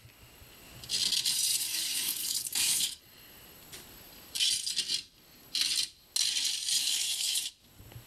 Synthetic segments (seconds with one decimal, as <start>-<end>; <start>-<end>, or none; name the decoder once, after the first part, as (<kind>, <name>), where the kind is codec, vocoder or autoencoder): 1.5-3.0 (codec, DAC); 6.8-7.5